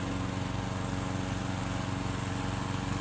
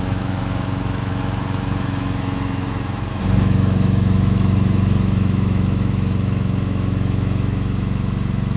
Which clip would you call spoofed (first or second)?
second